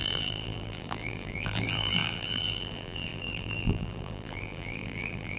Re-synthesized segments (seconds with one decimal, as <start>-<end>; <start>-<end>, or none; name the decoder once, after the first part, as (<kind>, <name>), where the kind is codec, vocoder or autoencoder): 0.0-5.4 (vocoder, BigVGAN v2)